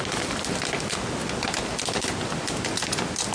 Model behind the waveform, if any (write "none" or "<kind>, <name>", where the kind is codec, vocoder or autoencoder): none